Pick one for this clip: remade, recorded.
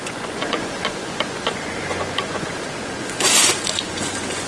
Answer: remade